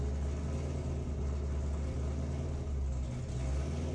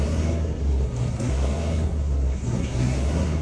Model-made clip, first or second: second